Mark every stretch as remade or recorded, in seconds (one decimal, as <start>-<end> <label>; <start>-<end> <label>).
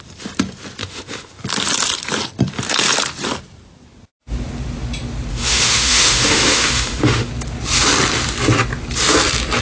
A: 0.0-0.8 recorded; 0.8-1.4 remade; 1.4-5.3 recorded; 5.3-7.3 remade; 7.3-9.6 recorded